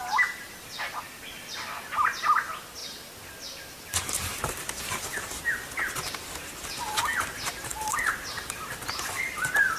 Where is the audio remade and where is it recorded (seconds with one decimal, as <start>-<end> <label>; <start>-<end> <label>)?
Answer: 0.0-9.8 recorded